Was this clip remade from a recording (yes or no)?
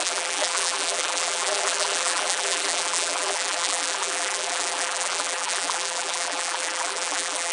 yes